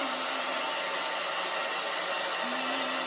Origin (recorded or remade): recorded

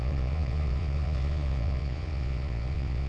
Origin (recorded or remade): remade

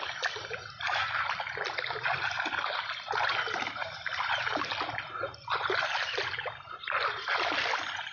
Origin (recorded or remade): recorded